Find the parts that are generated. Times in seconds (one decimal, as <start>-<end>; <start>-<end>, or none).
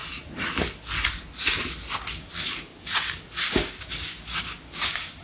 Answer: 2.0-5.2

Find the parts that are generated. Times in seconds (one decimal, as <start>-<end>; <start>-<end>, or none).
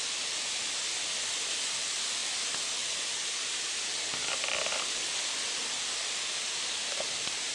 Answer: none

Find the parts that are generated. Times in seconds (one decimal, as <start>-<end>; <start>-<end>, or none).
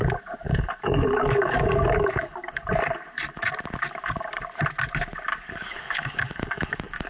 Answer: 0.4-2.6; 5.3-7.1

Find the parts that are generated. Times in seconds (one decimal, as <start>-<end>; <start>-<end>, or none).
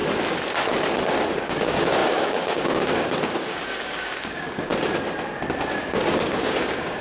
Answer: 1.3-4.7; 5.8-7.0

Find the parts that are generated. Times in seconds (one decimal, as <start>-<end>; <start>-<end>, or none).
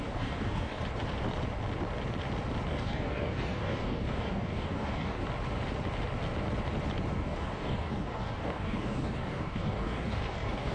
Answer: 0.0-0.8; 2.7-5.2; 7.1-10.7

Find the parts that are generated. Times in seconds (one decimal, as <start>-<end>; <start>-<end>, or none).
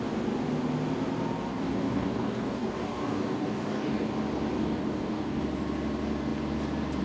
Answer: 1.5-4.1; 4.5-5.4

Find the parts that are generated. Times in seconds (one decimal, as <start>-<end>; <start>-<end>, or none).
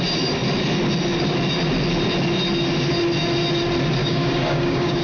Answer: 4.0-5.0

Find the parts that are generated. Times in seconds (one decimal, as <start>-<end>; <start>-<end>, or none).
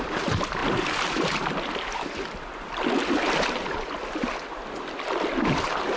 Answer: none